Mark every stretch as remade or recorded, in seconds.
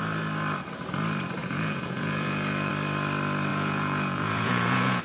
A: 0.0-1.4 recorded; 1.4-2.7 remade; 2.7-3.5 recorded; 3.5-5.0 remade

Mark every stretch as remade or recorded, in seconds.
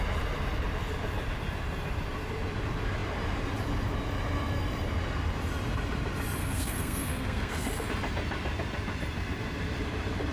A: 0.0-6.4 recorded; 6.4-7.8 remade; 7.8-10.3 recorded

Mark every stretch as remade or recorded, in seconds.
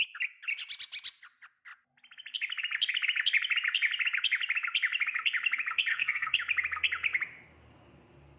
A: 0.0-5.9 recorded; 5.9-6.4 remade; 6.4-8.4 recorded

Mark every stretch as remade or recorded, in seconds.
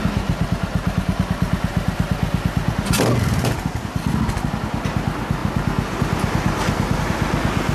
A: 0.0-7.7 recorded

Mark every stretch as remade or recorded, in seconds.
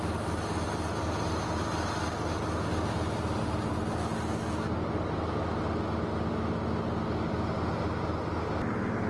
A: 0.0-9.1 recorded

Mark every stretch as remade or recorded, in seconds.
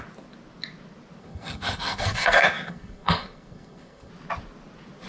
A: 0.0-1.2 recorded; 1.2-4.1 remade; 4.1-5.1 recorded